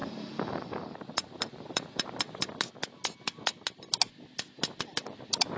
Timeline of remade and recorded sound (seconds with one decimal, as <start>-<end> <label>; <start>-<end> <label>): 0.0-2.6 remade; 2.6-5.6 recorded